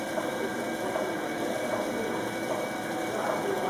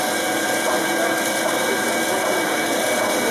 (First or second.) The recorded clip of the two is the second